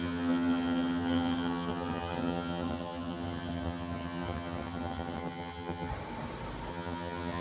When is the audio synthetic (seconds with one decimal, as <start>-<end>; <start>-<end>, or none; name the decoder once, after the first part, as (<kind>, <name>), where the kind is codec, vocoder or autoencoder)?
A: 0.0-5.9 (vocoder, HiFi-GAN); 6.7-7.4